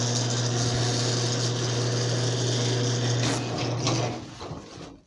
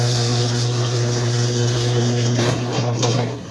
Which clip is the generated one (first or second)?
second